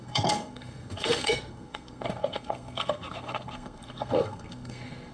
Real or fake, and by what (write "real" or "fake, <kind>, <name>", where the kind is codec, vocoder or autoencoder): fake, codec, SNAC